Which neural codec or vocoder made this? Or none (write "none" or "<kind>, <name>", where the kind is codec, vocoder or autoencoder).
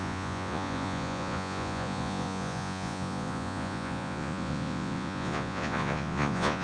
vocoder, Vocos